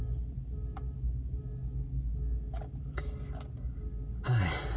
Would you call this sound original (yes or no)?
yes